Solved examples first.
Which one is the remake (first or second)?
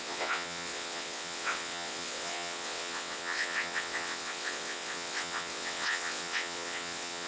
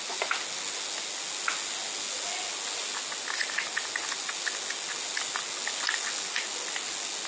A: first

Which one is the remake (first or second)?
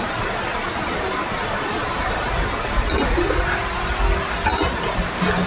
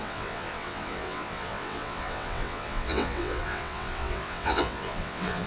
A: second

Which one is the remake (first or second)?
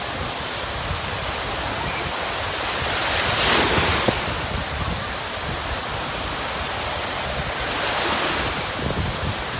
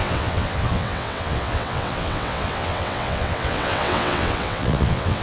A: second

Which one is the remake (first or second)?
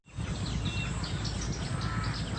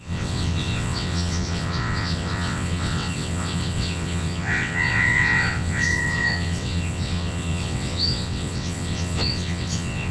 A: second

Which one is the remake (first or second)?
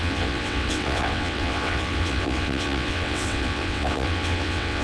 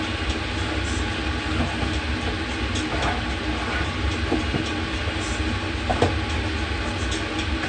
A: first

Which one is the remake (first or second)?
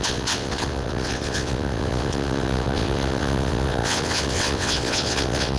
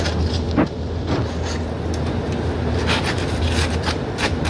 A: first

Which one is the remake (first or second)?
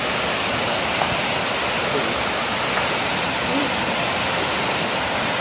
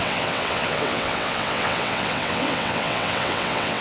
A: second